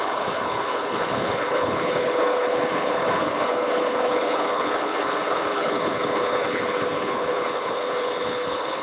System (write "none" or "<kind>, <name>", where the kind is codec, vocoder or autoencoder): codec, HILCodec